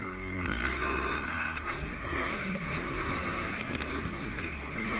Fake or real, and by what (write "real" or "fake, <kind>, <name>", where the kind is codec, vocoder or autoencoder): fake, codec, SNAC